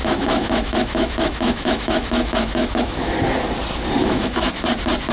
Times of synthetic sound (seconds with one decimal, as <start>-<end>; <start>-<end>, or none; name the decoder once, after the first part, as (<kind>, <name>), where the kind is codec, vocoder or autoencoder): 0.0-3.1 (autoencoder, DAC-VAE); 4.0-4.5